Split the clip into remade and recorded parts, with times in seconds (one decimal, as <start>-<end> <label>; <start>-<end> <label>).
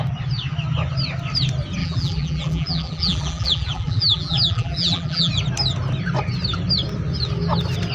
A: 0.0-1.8 recorded; 1.8-5.3 remade; 5.3-7.9 recorded